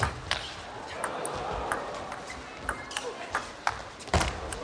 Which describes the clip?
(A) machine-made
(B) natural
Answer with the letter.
B